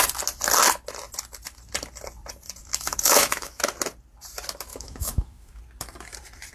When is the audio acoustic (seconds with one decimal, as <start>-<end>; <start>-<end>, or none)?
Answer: 0.0-2.6; 3.6-4.7; 5.6-6.5